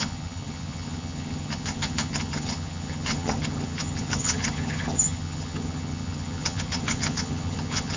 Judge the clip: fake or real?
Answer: fake